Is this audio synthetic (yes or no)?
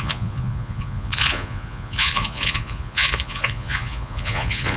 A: yes